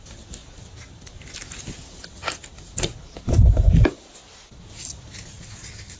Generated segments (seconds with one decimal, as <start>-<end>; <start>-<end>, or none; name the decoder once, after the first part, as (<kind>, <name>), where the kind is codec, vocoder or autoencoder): none